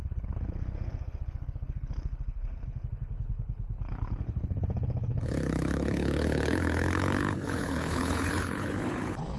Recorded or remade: remade